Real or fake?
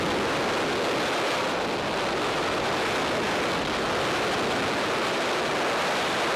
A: real